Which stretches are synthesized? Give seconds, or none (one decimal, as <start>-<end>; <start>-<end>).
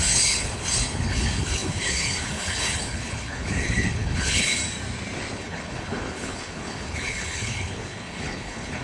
0.0-4.6; 5.3-8.8